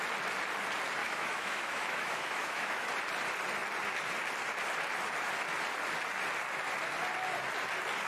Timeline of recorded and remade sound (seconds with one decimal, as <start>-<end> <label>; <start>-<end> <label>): 0.0-1.0 recorded; 1.0-2.9 remade; 2.9-8.1 recorded